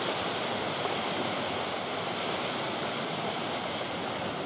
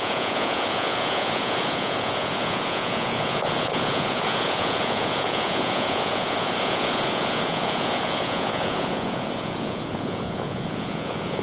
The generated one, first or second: second